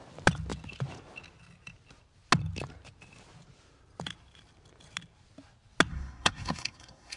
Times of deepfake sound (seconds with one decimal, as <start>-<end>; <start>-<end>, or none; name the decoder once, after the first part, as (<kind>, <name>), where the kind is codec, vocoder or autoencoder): 5.9-7.2 (codec, SNAC)